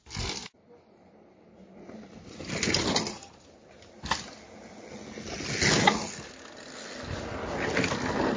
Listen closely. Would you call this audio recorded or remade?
recorded